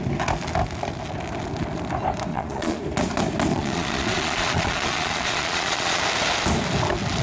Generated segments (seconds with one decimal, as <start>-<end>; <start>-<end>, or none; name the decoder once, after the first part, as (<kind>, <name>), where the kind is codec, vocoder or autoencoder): 2.3-2.8 (vocoder, Vocos); 3.5-6.0